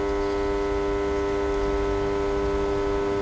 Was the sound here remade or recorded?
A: recorded